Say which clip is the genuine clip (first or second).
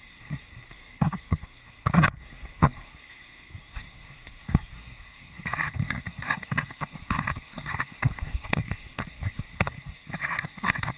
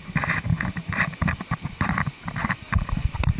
second